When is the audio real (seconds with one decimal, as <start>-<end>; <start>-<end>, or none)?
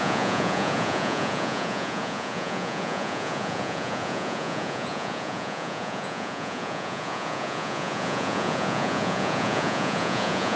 none